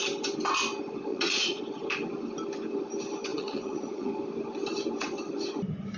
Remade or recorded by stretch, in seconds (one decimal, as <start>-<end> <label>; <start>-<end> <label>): 0.0-1.1 recorded; 1.1-1.6 remade; 1.6-3.3 recorded; 3.3-4.1 remade; 4.1-6.0 recorded